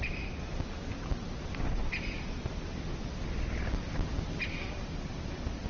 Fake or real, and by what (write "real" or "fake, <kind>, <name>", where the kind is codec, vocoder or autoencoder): real